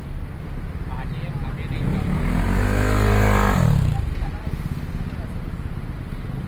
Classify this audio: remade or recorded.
recorded